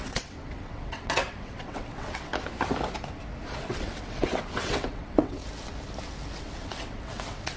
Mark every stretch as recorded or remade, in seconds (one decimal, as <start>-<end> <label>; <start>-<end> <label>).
0.0-2.3 remade; 2.3-3.6 recorded; 3.6-5.4 remade; 5.4-6.4 recorded; 6.4-7.6 remade